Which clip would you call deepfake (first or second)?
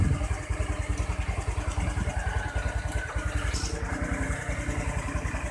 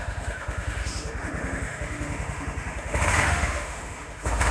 second